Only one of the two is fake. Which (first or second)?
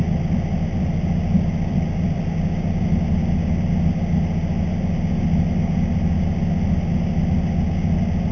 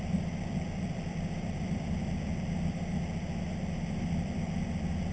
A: second